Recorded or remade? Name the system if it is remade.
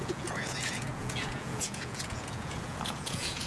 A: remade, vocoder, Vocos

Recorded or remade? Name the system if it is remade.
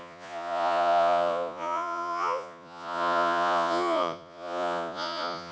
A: remade, vocoder, Vocos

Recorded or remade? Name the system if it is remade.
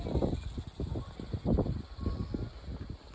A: recorded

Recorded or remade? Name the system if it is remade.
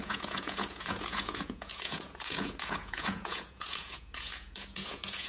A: remade, vocoder, Vocos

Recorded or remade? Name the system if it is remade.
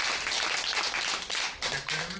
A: recorded